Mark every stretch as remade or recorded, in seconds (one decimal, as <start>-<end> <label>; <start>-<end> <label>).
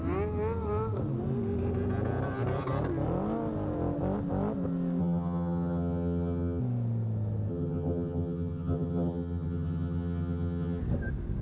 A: 0.0-5.0 recorded; 5.0-6.6 remade; 6.6-7.5 recorded; 7.5-10.8 remade; 10.8-11.4 recorded